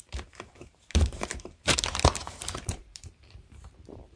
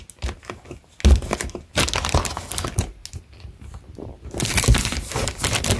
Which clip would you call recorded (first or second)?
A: second